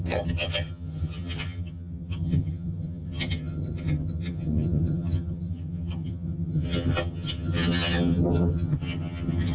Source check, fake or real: fake